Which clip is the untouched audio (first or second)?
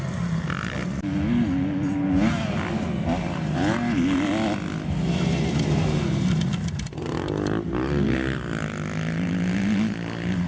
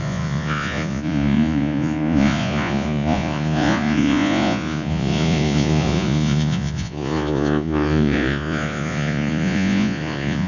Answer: first